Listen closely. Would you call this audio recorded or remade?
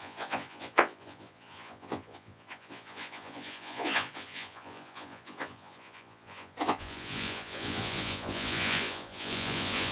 remade